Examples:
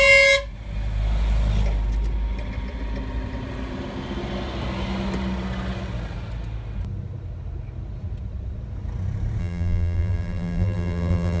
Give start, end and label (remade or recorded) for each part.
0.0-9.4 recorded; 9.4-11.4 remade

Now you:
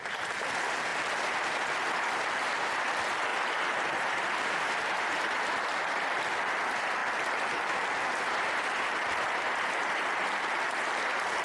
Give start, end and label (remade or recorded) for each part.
0.0-3.3 recorded; 3.3-5.5 remade; 5.5-11.4 recorded

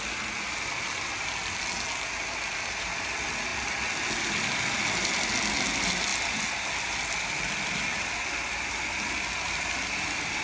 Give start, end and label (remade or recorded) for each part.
0.0-10.4 recorded

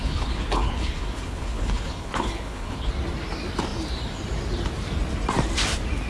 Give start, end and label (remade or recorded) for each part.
0.0-2.9 remade; 2.9-6.1 recorded